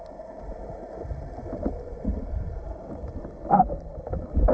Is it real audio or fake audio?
real